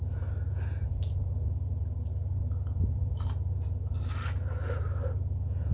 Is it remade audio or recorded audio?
recorded